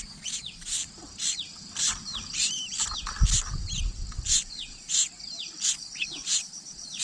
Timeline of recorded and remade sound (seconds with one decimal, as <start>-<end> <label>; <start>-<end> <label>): 0.0-0.8 remade; 0.8-4.5 recorded; 4.5-5.0 remade; 5.0-5.7 recorded; 5.7-7.0 remade